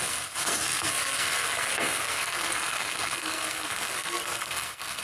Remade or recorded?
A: remade